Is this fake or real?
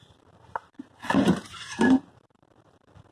fake